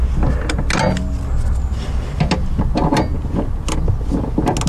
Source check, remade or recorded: recorded